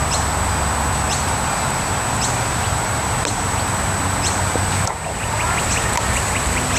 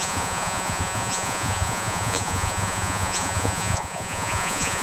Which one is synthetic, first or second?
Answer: second